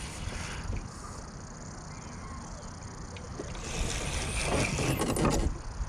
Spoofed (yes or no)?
no